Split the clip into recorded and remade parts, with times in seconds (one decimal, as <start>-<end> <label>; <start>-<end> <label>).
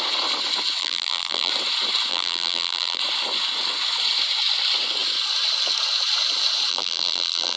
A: 0.0-0.8 recorded; 0.8-1.5 remade; 1.5-2.1 recorded; 2.1-3.0 remade; 3.0-6.7 recorded; 6.7-7.6 remade